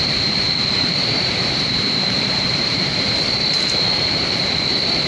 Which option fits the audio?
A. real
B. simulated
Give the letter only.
B